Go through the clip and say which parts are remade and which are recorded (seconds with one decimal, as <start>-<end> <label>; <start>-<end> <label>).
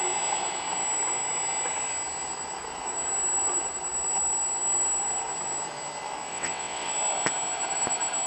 0.0-6.3 recorded; 6.3-6.9 remade; 6.9-8.3 recorded